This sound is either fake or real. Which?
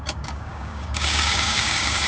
fake